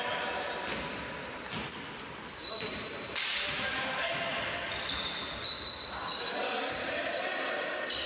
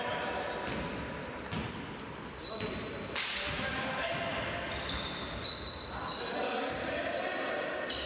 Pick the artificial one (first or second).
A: first